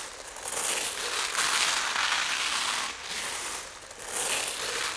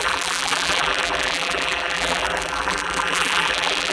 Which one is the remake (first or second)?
second